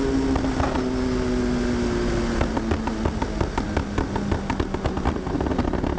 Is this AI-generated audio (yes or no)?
no